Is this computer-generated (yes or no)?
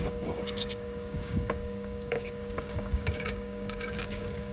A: yes